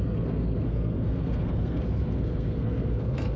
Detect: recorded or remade remade